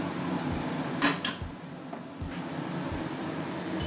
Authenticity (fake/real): real